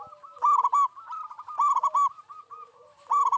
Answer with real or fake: real